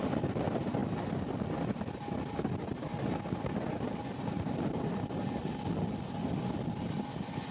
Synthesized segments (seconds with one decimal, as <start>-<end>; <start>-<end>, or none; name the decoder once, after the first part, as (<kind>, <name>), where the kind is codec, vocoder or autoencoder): none